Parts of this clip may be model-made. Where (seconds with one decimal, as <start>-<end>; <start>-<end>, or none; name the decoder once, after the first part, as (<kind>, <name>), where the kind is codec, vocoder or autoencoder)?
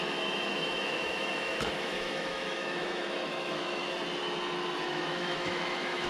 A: 0.0-3.8 (autoencoder, DAC-VAE); 4.8-6.1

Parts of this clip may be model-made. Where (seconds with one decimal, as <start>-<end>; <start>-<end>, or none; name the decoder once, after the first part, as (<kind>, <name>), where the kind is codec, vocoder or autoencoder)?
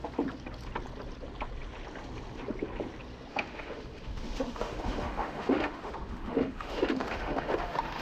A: 3.3-8.0 (autoencoder, DAC-VAE)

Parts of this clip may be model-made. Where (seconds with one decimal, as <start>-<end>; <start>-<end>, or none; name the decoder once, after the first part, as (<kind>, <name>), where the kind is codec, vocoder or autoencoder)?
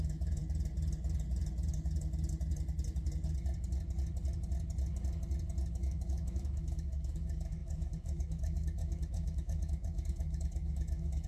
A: 0.0-0.4 (autoencoder, DAC-VAE); 5.7-11.3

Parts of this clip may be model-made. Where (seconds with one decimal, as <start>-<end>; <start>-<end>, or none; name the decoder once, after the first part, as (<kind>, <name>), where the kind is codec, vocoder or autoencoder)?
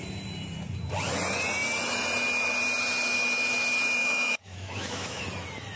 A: 4.0-5.2 (autoencoder, DAC-VAE)